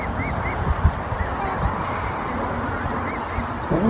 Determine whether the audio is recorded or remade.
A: recorded